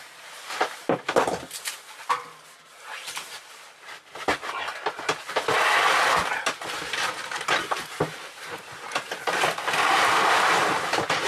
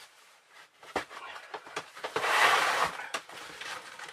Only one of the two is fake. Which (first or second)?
second